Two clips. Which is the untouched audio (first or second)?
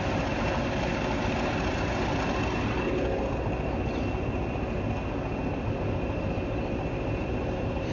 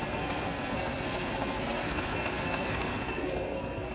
first